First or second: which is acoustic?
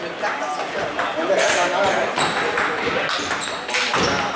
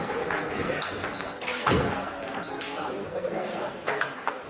first